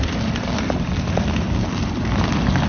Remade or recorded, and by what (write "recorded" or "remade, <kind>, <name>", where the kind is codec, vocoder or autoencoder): remade, vocoder, BigVGAN v2